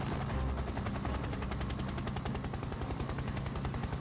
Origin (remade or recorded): recorded